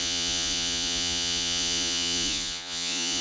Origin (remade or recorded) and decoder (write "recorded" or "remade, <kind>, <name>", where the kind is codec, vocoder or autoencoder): remade, vocoder, Vocos